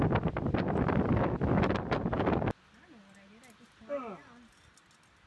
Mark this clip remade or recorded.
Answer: recorded